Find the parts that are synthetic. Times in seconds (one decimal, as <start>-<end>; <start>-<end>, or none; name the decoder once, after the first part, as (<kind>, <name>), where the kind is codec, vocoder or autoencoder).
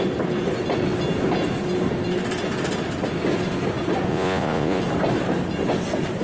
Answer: 4.1-4.8 (vocoder, Vocos)